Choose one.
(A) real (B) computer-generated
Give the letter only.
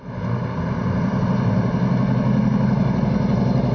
A